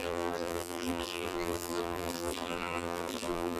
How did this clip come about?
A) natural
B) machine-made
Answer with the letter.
B